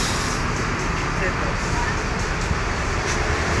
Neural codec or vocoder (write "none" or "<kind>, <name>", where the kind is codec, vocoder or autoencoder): vocoder, BigVGAN v2